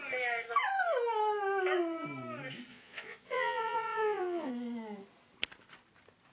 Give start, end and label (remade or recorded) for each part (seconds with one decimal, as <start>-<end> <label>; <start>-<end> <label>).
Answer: 0.0-2.7 recorded; 2.7-4.5 remade; 4.5-6.3 recorded